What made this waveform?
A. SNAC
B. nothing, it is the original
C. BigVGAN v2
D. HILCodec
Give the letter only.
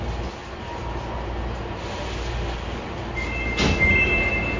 B